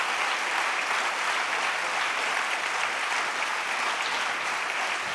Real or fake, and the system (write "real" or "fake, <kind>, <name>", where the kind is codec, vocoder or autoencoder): real